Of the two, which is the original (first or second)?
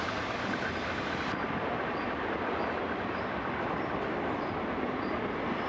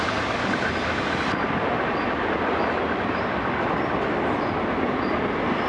second